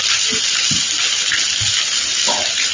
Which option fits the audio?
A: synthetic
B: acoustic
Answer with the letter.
B